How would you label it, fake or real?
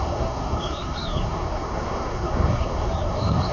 fake